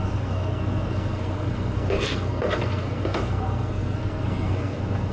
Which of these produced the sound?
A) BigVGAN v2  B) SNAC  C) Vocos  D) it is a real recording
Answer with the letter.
B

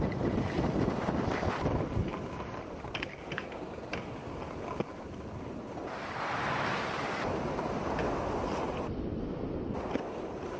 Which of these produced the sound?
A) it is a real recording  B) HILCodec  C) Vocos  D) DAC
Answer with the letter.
A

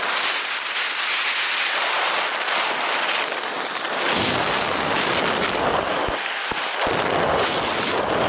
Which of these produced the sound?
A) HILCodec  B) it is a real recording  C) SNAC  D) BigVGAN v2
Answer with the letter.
B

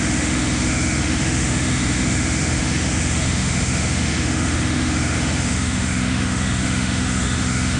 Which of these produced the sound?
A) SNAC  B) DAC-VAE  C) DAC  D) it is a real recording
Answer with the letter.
B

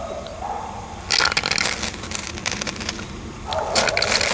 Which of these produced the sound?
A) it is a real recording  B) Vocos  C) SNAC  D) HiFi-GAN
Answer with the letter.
A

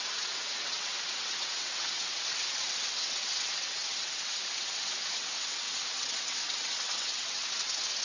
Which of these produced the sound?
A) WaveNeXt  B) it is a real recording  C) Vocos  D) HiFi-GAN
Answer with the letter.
A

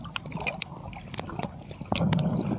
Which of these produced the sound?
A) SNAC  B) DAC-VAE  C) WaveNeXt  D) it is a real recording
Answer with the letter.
D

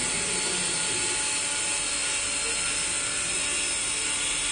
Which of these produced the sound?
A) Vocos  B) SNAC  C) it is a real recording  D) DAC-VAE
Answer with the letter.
C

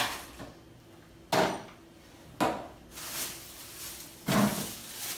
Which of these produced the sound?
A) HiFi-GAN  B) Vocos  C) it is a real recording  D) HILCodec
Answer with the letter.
C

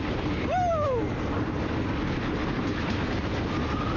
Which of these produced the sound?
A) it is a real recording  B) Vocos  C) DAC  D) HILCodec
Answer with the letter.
A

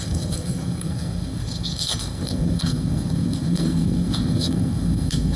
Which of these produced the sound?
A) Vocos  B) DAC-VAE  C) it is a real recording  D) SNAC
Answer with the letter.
D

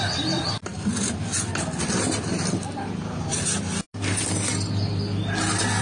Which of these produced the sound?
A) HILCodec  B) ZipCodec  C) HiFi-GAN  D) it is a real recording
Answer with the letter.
D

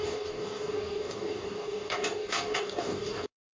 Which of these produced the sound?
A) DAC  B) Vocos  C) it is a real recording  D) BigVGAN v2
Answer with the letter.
A